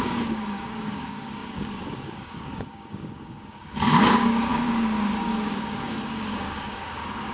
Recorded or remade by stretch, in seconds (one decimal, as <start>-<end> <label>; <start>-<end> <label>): 0.0-7.3 remade